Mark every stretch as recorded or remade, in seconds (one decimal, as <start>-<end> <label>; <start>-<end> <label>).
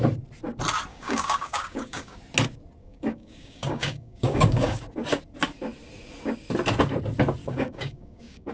0.0-0.9 recorded; 0.9-2.2 remade; 2.2-2.8 recorded; 2.8-4.8 remade; 4.8-7.4 recorded; 7.4-8.5 remade